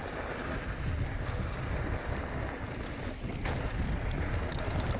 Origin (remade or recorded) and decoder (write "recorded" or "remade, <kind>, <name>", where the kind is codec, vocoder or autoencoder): recorded